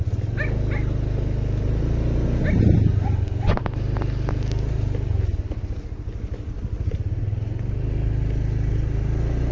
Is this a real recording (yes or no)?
yes